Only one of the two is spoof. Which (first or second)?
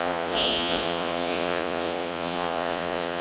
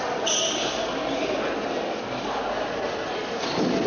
first